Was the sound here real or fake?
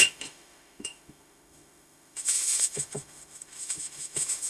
fake